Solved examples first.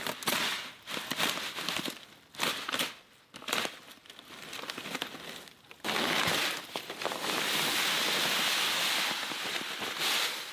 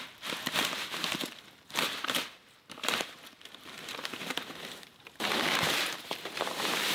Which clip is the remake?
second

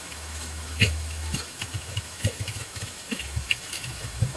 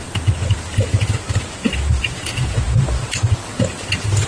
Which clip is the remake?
first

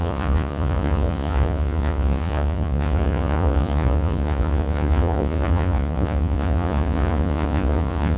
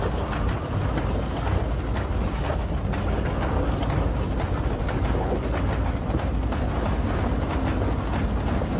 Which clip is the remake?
first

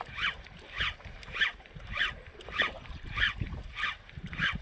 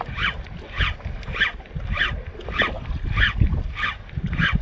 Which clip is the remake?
first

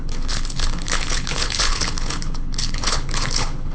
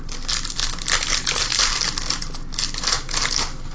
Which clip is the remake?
first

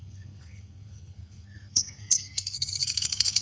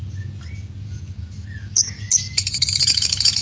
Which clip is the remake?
first